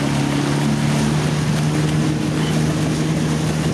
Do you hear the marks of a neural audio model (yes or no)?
no